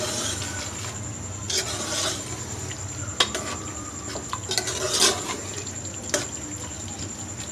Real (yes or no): yes